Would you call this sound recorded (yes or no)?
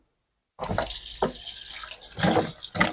yes